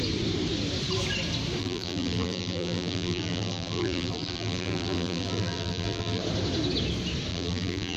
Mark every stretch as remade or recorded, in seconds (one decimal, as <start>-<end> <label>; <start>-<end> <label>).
0.0-1.6 recorded; 1.6-6.2 remade; 6.2-7.3 recorded; 7.3-8.0 remade